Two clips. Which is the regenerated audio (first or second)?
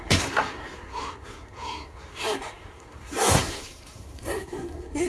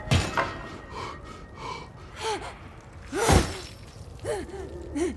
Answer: first